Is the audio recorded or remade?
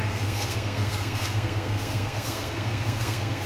remade